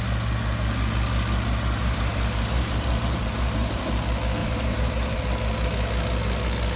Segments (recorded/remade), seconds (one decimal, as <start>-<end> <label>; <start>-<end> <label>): 0.0-1.8 recorded; 1.8-3.8 remade; 3.8-4.4 recorded; 4.4-5.2 remade; 5.2-6.8 recorded